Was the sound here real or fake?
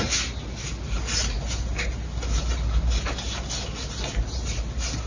real